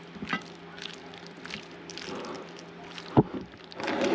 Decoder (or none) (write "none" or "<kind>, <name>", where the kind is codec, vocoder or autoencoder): none